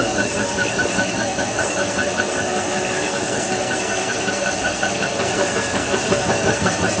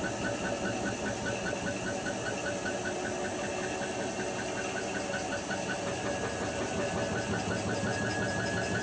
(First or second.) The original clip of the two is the second